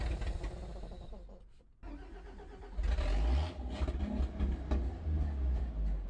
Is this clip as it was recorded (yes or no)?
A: yes